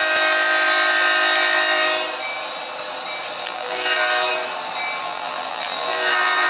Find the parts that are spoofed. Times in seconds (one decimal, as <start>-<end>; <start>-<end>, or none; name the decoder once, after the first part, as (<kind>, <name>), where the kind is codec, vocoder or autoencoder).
3.4-4.3 (vocoder, BigVGAN v2); 5.0-6.5